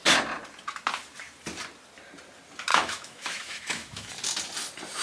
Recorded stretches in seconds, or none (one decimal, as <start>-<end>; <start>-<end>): 0.0-2.7; 4.1-5.0